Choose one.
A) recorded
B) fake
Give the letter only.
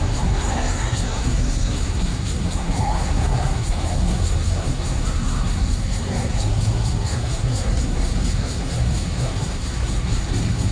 B